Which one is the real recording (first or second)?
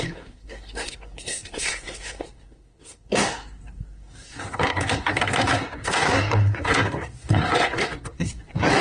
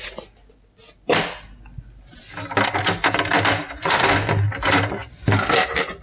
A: second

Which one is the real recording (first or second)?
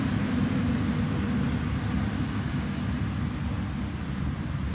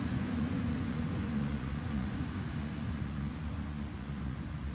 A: first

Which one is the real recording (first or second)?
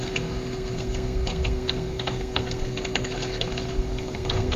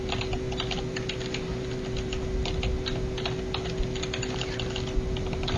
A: second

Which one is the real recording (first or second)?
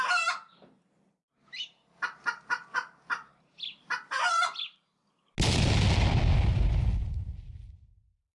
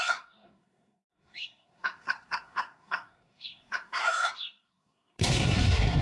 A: first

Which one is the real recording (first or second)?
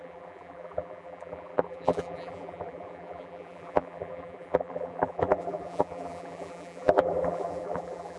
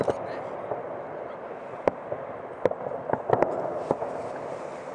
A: second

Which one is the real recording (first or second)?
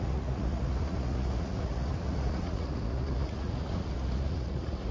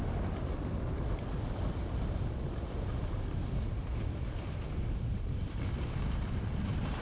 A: second